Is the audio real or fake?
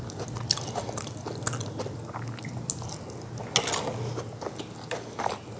real